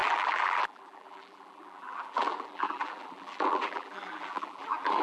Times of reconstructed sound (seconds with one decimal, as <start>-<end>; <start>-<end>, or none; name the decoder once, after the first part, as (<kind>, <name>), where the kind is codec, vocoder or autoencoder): 0.0-5.0 (vocoder, BigVGAN v2)